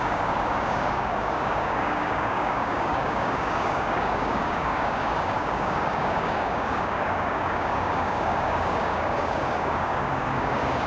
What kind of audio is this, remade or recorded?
remade